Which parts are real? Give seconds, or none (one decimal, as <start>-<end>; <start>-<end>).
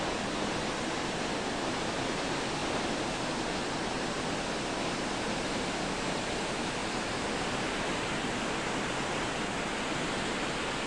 0.0-10.9